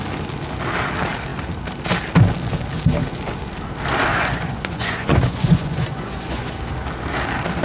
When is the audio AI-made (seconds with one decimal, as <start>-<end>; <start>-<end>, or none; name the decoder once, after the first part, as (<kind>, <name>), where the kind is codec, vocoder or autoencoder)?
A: 4.1-6.6 (vocoder, Vocos)